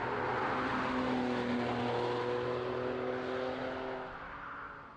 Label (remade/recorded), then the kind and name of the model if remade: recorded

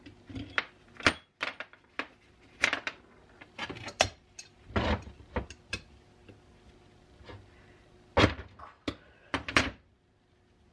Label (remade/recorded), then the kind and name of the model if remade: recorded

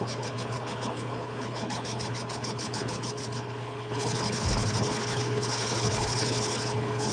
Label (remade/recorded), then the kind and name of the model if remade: remade, codec, HILCodec